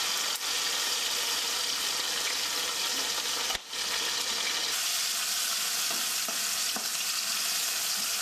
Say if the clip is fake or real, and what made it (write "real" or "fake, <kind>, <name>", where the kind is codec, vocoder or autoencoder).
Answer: real